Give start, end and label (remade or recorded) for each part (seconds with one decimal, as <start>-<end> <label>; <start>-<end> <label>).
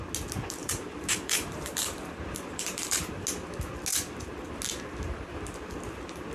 0.0-0.6 recorded; 0.6-3.1 remade; 3.1-6.3 recorded